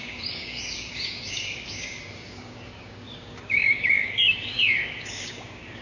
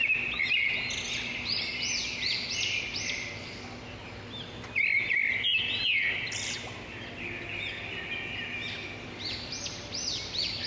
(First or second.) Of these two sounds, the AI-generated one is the first